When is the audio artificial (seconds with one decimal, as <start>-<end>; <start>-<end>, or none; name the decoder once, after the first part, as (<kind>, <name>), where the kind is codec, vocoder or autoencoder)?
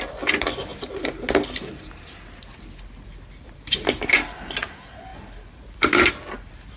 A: none